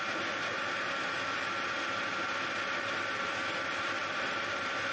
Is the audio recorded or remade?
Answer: remade